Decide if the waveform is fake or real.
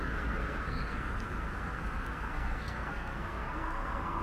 fake